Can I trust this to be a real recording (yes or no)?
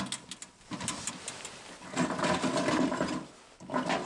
yes